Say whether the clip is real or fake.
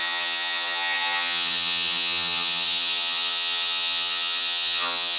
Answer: fake